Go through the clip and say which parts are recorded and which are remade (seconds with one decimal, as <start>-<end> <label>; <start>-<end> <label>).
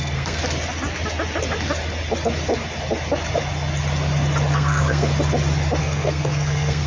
0.0-0.4 remade; 0.4-4.5 recorded; 4.5-5.1 remade; 5.1-5.8 recorded; 5.8-6.9 remade